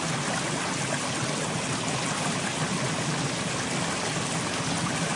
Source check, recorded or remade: recorded